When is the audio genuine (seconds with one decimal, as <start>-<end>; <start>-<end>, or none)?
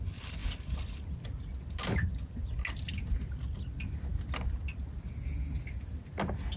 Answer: 0.0-6.6